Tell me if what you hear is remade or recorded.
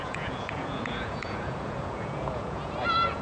remade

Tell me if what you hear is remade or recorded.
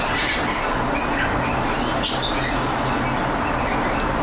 recorded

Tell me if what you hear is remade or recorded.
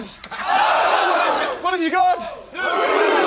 remade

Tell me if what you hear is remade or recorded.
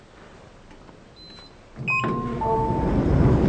recorded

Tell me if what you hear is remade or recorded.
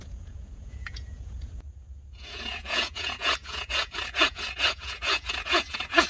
remade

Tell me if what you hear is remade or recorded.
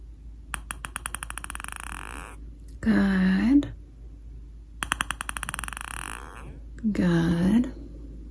recorded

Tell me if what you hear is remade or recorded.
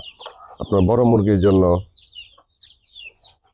remade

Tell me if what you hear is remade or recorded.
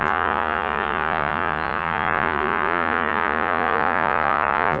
remade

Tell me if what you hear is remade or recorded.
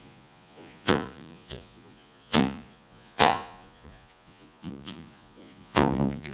remade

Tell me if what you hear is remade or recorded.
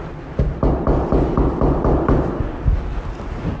recorded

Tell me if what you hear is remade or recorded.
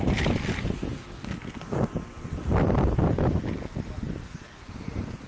recorded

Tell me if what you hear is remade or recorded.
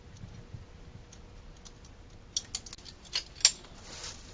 recorded